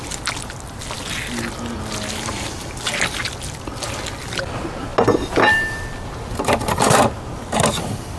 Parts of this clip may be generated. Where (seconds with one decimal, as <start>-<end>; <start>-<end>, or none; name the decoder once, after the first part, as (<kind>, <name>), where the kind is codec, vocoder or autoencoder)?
none

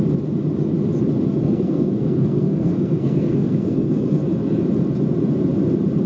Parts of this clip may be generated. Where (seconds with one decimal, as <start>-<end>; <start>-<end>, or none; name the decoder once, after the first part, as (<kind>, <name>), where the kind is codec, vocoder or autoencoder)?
1.4-4.2 (codec, SNAC)

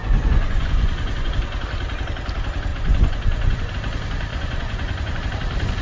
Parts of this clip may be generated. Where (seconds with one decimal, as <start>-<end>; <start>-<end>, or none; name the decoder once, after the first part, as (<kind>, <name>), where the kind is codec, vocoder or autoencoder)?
0.0-1.3 (vocoder, Vocos); 2.7-3.7; 4.3-5.2

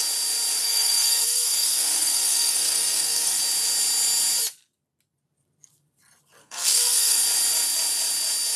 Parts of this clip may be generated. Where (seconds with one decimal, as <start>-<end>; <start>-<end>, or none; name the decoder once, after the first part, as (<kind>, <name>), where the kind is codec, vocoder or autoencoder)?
0.6-3.4 (codec, SNAC); 6.4-7.2

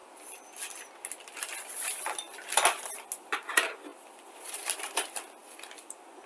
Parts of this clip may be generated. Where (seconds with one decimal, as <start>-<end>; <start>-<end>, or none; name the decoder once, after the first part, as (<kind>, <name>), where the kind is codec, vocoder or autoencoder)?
3.2-6.3 (vocoder, BigVGAN v2)

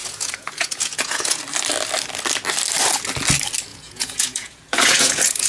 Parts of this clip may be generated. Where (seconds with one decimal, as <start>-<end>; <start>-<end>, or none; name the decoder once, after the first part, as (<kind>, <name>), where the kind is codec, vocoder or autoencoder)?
0.0-1.4 (vocoder, Vocos); 3.7-5.5

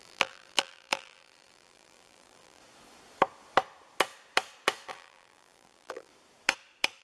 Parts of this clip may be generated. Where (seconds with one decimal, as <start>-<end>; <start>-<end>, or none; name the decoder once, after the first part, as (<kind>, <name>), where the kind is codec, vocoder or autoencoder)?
0.0-2.6 (vocoder, BigVGAN v2); 4.9-6.1

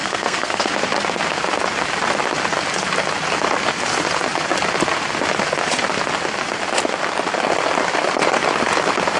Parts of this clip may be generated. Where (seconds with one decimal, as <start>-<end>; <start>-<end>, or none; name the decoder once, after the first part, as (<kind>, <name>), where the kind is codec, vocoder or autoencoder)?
0.0-0.7 (codec, SNAC)